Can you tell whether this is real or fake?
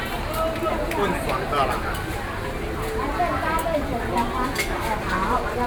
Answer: real